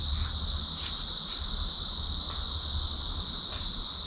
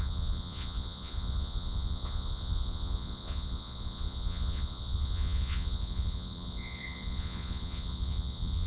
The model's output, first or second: second